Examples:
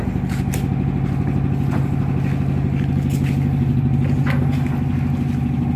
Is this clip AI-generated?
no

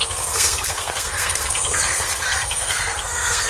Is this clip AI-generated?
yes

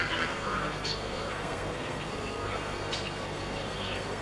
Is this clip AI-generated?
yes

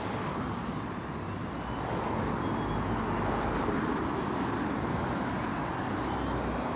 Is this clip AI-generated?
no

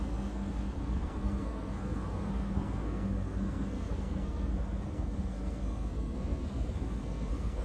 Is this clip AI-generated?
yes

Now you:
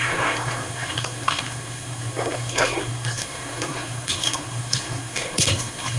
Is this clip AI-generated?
yes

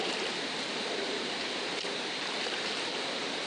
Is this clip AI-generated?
no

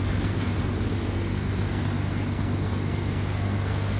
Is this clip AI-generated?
yes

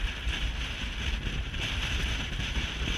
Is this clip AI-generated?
no